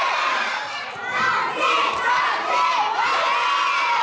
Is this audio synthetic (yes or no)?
no